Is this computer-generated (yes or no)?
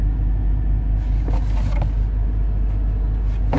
no